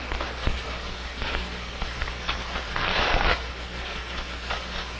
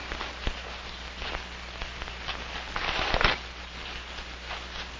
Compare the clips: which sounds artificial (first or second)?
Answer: first